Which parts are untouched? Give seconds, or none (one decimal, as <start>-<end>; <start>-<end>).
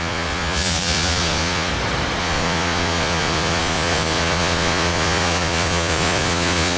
1.7-2.2